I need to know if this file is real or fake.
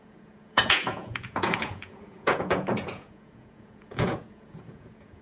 fake